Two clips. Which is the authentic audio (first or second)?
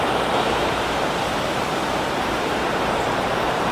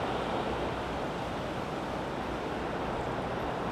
second